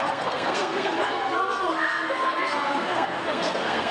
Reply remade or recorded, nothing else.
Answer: remade